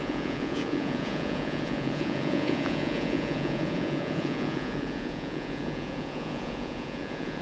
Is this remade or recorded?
remade